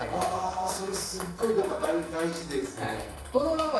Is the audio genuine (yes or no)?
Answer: no